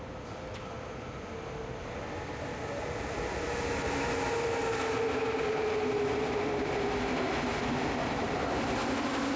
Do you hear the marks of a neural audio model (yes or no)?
no